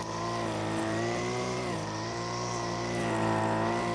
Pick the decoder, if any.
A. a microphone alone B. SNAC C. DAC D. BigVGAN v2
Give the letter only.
D